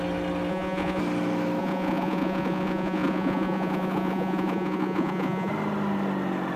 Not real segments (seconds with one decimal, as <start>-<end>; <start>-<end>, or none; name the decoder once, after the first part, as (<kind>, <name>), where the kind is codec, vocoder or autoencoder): 0.5-1.0 (vocoder, Vocos); 1.6-5.5